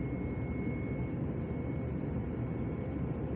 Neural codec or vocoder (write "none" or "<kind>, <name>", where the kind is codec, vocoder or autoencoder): none